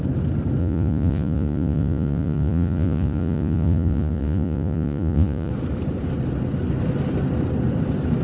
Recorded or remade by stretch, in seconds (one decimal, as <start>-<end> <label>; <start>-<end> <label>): 0.0-0.6 recorded; 0.6-5.5 remade; 5.5-8.2 recorded